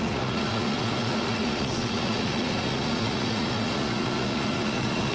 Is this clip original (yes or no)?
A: no